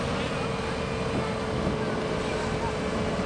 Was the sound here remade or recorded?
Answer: recorded